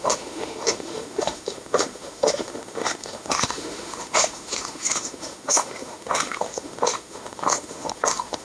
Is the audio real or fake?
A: fake